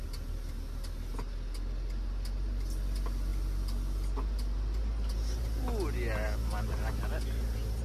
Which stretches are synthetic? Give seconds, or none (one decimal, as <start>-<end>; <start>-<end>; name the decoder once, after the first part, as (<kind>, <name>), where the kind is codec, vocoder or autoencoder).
none